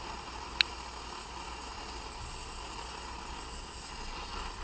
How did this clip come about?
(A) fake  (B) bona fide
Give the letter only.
B